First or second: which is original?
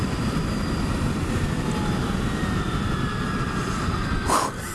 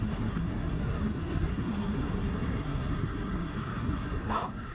first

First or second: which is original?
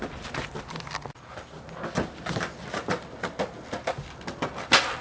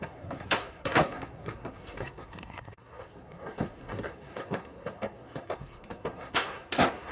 first